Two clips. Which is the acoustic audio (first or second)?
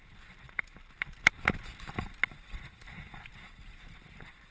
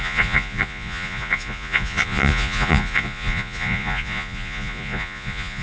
first